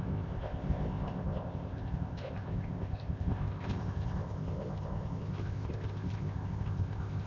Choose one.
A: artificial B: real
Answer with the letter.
A